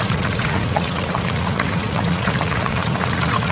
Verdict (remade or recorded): remade